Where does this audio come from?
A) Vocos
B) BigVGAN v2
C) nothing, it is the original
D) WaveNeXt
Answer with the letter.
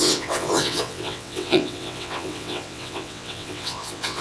D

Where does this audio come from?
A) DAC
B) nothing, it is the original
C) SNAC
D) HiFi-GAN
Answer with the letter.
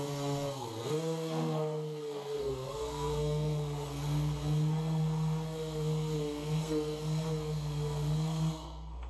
C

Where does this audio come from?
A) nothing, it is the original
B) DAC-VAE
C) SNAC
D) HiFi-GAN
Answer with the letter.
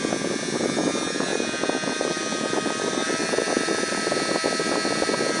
A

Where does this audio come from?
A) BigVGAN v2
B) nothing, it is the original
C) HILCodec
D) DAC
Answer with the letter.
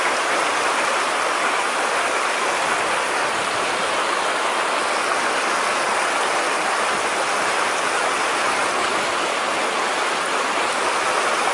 B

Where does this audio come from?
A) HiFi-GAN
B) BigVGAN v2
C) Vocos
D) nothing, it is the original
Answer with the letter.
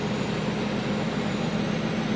D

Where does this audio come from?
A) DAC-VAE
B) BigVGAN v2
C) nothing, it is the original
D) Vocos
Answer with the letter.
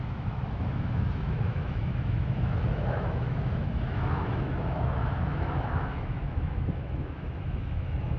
A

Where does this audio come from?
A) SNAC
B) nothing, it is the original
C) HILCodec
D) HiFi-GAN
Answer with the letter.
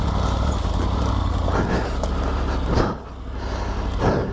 B